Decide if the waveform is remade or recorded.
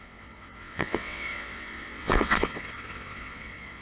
remade